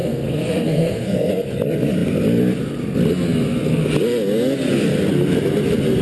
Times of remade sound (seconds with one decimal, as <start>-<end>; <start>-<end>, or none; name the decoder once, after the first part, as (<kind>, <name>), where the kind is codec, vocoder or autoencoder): 0.0-1.3 (codec, SNAC)